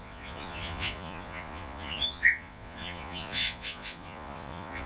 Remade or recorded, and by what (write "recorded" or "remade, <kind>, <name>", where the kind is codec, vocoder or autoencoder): remade, vocoder, Vocos